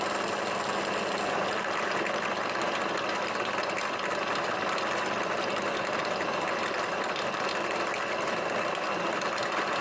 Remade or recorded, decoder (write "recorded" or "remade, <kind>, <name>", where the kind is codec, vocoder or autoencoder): recorded